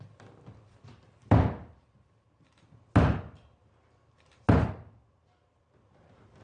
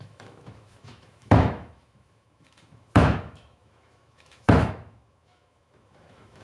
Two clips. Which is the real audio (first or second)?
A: first